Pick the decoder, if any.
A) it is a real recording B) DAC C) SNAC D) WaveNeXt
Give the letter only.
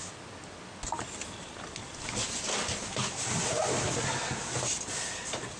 A